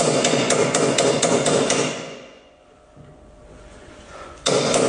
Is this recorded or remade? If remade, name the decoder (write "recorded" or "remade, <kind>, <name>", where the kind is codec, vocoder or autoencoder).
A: remade, vocoder, Vocos